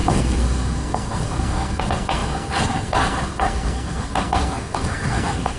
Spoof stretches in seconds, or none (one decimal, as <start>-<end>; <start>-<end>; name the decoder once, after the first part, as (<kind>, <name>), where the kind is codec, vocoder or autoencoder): 0.0-5.6 (codec, SNAC)